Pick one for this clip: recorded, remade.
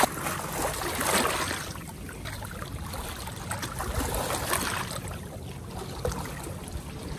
recorded